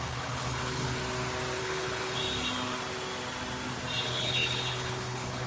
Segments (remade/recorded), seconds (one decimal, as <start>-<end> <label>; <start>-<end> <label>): 0.0-1.0 remade; 1.0-1.6 recorded; 1.6-2.2 remade; 2.2-4.0 recorded; 4.0-5.5 remade